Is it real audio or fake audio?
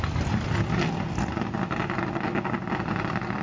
real